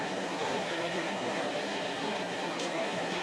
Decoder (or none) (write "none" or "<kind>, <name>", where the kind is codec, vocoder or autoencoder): codec, SNAC